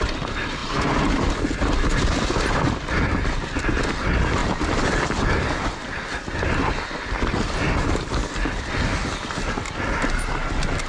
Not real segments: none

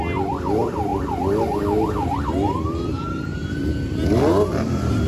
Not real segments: none

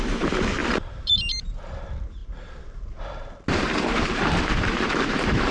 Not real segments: 0.0-5.5 (vocoder, BigVGAN v2)

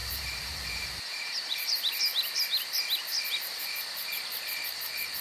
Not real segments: 0.0-2.0 (vocoder, BigVGAN v2); 3.5-4.1

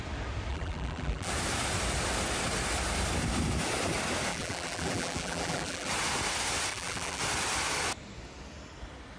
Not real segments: 0.5-1.3 (vocoder, BigVGAN v2); 4.3-5.9; 6.7-7.2

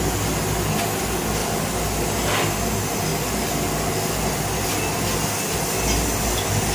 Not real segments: none